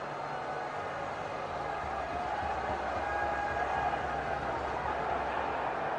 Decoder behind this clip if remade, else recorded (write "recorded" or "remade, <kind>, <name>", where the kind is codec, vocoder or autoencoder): recorded